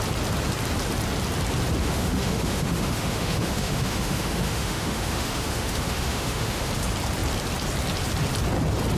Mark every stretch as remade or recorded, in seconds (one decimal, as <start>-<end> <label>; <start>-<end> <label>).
0.0-1.8 recorded; 1.8-6.7 remade; 6.7-9.0 recorded